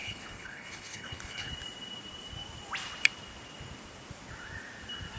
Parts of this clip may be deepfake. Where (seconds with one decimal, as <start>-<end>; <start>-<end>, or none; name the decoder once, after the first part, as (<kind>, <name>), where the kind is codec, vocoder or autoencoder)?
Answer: 0.0-1.5 (codec, HILCodec)